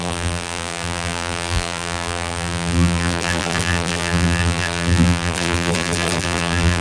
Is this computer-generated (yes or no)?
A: yes